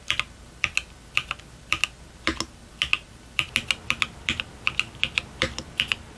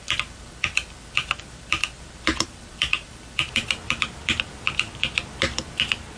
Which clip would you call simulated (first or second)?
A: second